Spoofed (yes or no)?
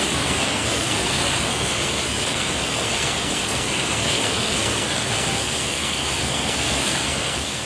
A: yes